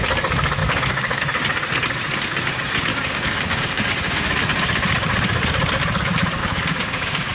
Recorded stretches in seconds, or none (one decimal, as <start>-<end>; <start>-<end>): 0.0-0.6; 1.2-2.9; 4.3-6.4